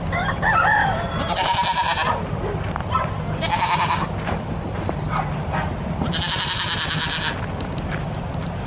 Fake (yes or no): no